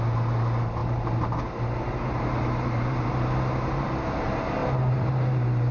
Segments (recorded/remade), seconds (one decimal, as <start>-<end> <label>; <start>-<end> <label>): 0.0-0.8 recorded; 0.8-3.9 remade; 3.9-4.6 recorded; 4.6-5.7 remade